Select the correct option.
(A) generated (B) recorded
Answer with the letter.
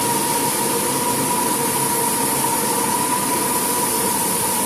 B